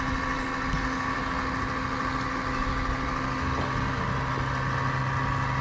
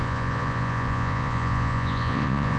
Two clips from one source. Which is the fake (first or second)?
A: second